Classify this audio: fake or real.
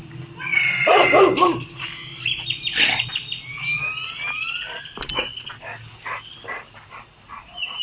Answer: real